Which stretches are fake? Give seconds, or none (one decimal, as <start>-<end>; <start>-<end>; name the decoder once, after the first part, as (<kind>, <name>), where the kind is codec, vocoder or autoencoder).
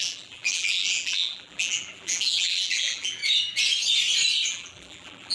0.0-3.2 (vocoder, BigVGAN v2); 4.5-5.3